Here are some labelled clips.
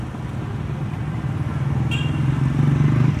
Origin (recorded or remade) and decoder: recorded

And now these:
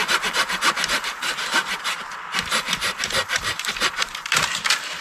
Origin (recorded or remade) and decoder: remade, vocoder, BigVGAN v2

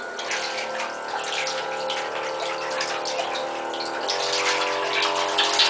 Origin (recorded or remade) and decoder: recorded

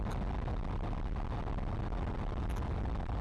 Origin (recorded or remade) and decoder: recorded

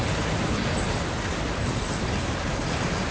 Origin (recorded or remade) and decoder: remade, vocoder, BigVGAN v2